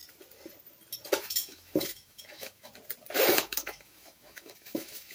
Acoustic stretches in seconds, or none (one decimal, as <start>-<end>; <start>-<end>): 0.0-1.2; 2.7-3.3